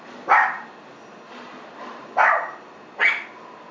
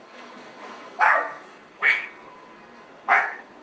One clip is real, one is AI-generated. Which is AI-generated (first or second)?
second